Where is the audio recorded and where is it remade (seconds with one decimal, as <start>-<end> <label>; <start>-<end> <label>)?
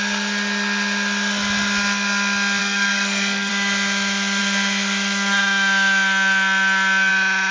0.0-2.6 recorded; 2.6-3.5 remade; 3.5-7.5 recorded